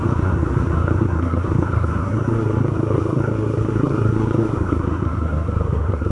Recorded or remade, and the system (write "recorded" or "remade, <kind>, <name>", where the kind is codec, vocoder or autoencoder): remade, codec, SNAC